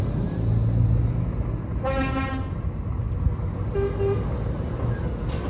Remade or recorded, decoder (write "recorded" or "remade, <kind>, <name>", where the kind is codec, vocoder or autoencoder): recorded